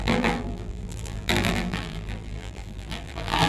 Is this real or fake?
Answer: fake